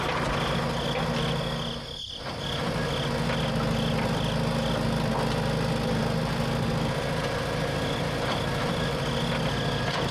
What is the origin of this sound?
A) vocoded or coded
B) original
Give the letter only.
B